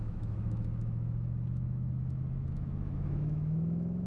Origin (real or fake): fake